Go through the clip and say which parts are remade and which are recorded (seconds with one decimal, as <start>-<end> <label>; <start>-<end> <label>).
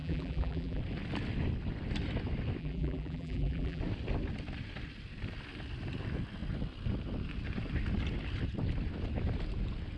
0.0-0.8 remade; 0.8-2.6 recorded; 2.6-3.8 remade; 3.8-10.0 recorded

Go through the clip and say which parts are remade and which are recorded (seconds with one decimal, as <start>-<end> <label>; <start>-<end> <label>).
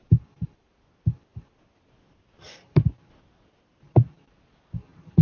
0.0-0.7 remade; 0.7-5.2 recorded